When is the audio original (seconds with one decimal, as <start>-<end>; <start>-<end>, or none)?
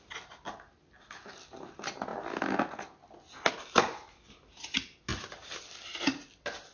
0.0-6.7